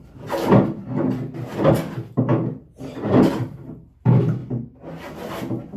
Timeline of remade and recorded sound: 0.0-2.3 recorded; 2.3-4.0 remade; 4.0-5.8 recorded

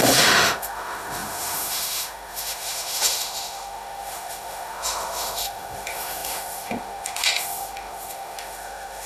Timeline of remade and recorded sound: 0.0-9.1 remade

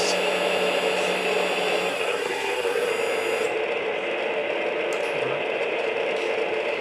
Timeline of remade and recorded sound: 0.0-1.9 recorded; 1.9-2.9 remade; 2.9-6.8 recorded

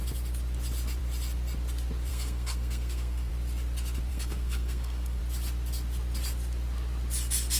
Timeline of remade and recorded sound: 0.0-2.1 recorded; 2.1-3.3 remade; 3.3-4.1 recorded; 4.1-5.2 remade; 5.2-7.6 recorded